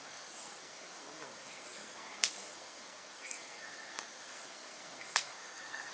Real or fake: fake